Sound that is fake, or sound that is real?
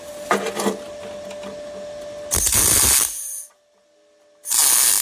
real